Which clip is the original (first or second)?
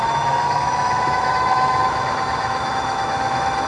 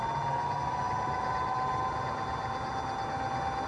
second